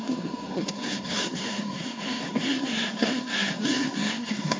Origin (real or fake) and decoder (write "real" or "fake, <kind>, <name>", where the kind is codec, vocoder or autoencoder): fake, codec, SNAC